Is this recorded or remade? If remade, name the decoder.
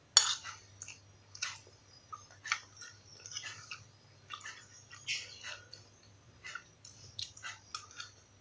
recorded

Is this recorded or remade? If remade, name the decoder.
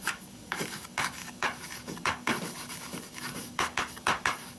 remade, codec, DAC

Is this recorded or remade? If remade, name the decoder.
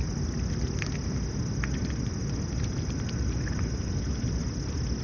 recorded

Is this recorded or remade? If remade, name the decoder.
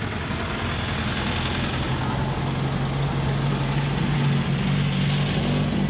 recorded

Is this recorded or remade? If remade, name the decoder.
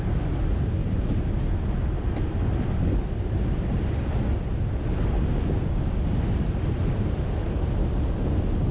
recorded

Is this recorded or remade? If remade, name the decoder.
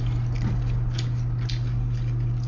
recorded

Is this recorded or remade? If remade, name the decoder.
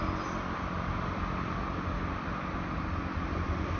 recorded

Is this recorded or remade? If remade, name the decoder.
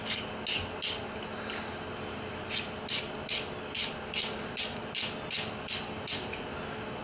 recorded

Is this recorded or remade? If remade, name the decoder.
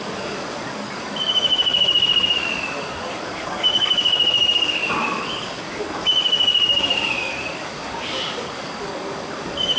remade, codec, DAC